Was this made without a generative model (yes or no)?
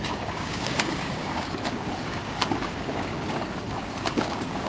no